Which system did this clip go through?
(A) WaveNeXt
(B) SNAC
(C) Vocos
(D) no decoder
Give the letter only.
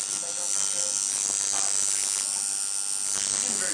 D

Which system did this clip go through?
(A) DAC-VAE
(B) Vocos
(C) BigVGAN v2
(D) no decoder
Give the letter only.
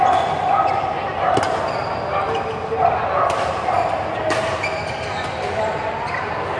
D